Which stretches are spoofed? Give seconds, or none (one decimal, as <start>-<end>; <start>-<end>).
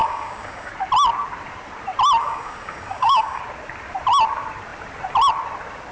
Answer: 0.0-0.7; 2.2-3.4